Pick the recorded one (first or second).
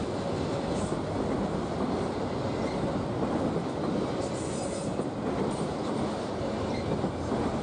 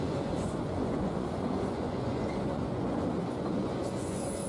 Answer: first